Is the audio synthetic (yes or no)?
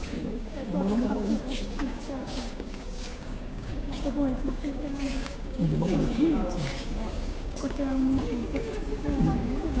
yes